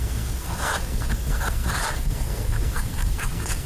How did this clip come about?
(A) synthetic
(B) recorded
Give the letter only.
A